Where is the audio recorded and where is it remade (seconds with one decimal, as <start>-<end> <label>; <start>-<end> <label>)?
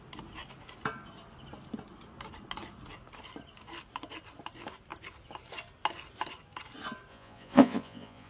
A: 0.0-7.1 recorded; 7.1-8.3 remade